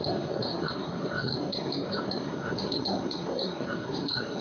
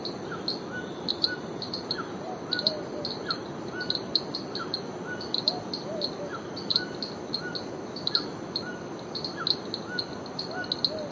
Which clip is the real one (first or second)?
second